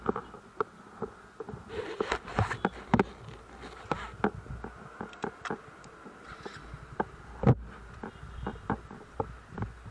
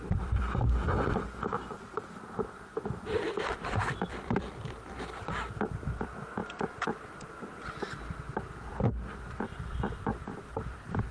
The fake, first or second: second